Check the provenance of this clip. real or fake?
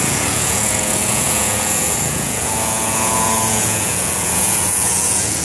fake